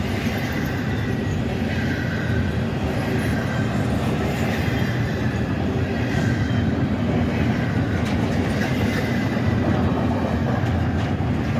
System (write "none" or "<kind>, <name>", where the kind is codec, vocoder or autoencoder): none